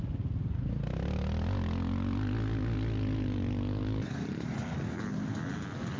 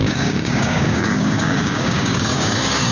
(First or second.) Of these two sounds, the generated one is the second